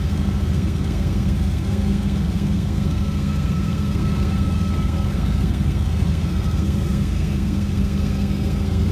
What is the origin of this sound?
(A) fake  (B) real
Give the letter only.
A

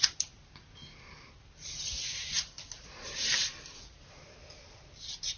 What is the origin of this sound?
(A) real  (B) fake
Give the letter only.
A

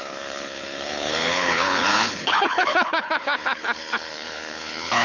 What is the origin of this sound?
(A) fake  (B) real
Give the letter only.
A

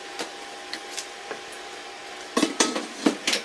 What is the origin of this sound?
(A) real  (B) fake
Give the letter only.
B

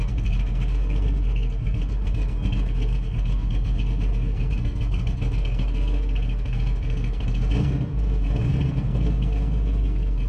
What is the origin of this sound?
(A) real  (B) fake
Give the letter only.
B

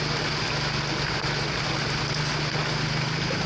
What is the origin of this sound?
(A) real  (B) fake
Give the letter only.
A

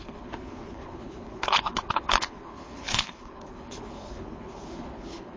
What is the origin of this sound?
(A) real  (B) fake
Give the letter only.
B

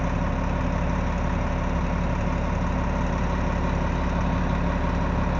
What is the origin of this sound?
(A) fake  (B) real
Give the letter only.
B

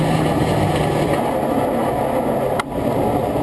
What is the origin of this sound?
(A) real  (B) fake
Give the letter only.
A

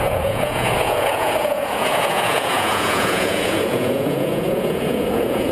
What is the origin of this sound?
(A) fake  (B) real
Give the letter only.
A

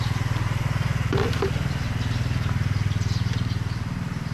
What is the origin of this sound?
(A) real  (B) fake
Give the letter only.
A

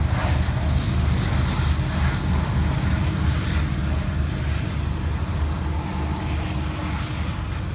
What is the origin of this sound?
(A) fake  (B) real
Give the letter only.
B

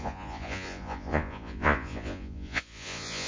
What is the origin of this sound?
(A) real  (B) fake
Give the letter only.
B